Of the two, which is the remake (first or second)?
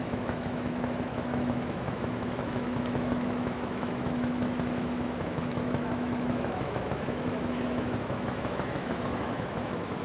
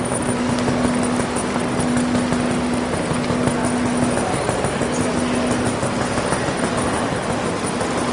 first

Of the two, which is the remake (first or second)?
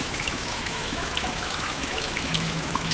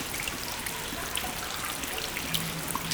first